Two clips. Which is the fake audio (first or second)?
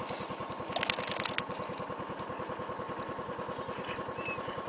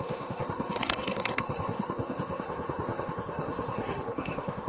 second